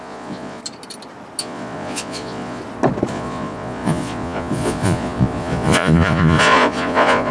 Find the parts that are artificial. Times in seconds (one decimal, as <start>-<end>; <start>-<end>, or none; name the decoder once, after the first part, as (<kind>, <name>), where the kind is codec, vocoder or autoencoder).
0.0-0.6 (vocoder, Vocos); 1.4-2.6; 3.1-7.3